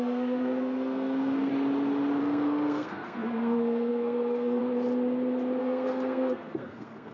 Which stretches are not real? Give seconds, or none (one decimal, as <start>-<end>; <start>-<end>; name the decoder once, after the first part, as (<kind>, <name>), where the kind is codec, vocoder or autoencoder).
0.0-1.5 (codec, SNAC); 2.2-4.6; 5.6-7.1